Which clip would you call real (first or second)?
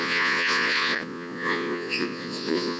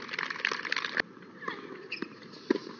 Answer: second